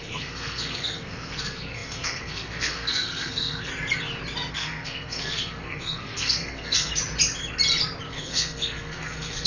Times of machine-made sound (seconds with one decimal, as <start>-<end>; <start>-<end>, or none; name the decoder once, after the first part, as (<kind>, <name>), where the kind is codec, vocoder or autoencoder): 0.0-3.7 (codec, SNAC); 4.5-6.9; 8.1-9.5